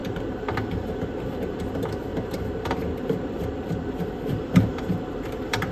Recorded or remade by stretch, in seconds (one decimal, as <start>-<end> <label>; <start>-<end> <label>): 0.0-1.7 remade; 1.7-2.1 recorded; 2.1-5.7 remade